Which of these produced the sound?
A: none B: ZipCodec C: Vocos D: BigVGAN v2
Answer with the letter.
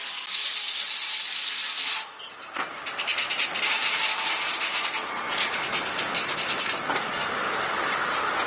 A